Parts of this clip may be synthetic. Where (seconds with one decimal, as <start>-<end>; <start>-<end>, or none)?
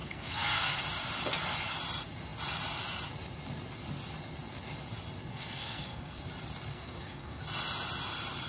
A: 0.0-0.8; 5.3-6.2; 6.7-7.4